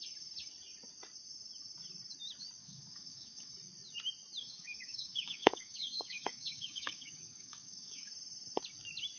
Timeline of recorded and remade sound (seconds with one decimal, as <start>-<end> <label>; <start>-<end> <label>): 0.0-2.6 recorded; 2.6-3.5 remade; 3.5-4.4 recorded; 4.4-8.1 remade; 8.1-9.2 recorded

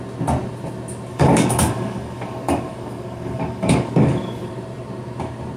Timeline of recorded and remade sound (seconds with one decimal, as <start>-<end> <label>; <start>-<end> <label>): 0.0-1.1 recorded; 1.1-4.5 remade; 4.5-5.6 recorded

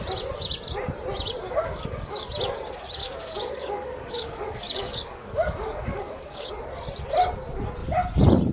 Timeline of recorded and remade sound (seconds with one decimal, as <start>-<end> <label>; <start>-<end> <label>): 0.0-1.4 recorded; 1.4-2.3 remade; 2.3-3.0 recorded; 3.0-6.5 remade; 6.5-8.5 recorded

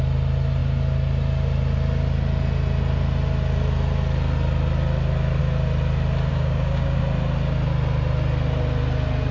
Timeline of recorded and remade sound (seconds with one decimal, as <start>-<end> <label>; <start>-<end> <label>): 0.0-6.3 recorded; 6.3-7.0 remade; 7.0-9.3 recorded

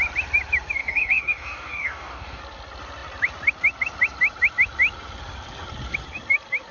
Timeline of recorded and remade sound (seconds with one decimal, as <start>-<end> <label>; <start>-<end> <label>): 0.0-0.8 recorded; 0.8-2.4 remade; 2.4-6.7 recorded